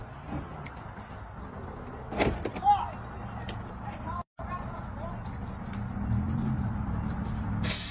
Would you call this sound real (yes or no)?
yes